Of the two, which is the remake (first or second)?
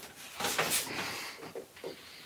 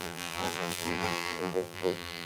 second